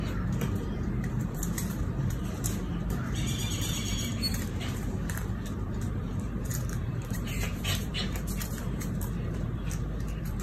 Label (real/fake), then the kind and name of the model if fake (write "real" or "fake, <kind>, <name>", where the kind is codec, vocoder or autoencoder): fake, vocoder, BigVGAN v2